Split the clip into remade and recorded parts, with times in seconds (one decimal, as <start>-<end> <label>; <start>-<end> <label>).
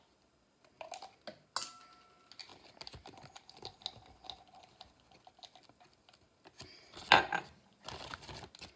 0.0-8.8 recorded